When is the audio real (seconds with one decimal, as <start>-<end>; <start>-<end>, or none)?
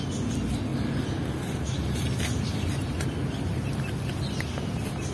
0.0-5.1